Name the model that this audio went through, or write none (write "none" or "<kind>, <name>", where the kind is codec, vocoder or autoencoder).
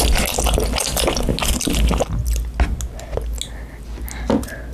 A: none